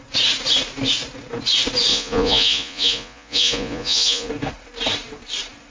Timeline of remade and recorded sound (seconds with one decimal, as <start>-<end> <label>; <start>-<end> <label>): 0.0-1.9 recorded; 1.9-4.3 remade; 4.3-5.7 recorded